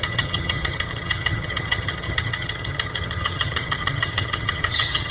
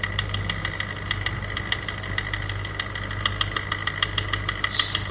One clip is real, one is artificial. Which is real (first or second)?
second